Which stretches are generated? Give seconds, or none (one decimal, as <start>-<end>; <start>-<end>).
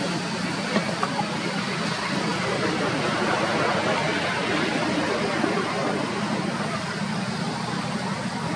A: none